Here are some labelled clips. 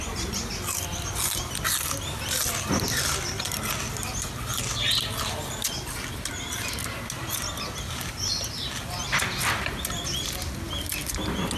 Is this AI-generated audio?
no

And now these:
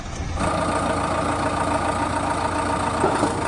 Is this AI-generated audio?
no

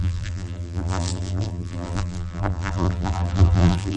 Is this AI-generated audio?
yes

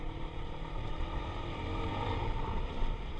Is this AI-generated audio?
yes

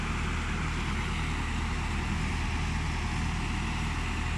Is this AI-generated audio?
no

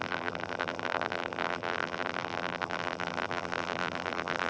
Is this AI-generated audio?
yes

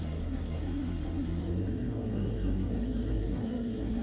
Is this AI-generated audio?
yes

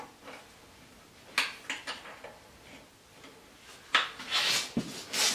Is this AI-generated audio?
no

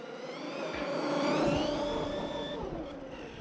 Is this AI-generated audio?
no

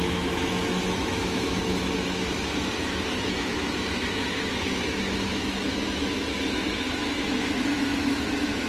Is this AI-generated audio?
yes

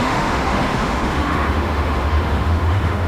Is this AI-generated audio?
yes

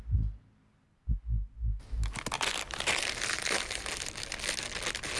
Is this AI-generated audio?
no